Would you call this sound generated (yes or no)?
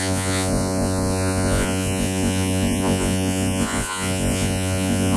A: yes